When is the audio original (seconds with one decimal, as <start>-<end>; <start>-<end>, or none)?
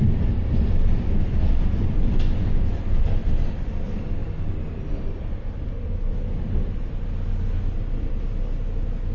0.0-9.1